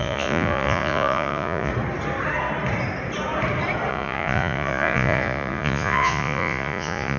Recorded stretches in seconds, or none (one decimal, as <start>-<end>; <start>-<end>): 1.7-3.9